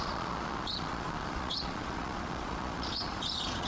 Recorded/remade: remade